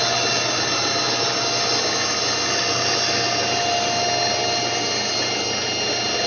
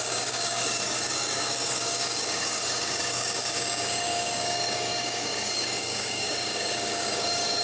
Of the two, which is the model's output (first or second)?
second